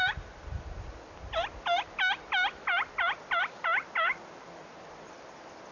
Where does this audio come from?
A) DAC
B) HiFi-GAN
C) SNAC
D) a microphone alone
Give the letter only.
D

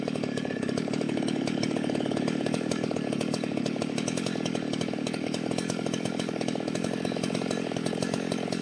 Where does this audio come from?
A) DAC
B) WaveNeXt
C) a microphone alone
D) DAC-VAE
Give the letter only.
A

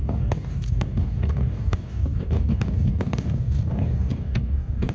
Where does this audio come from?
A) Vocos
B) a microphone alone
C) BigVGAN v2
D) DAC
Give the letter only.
D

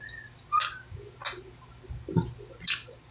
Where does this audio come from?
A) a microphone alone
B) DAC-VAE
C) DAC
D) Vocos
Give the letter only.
A